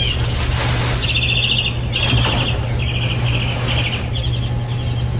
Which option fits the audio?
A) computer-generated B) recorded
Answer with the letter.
B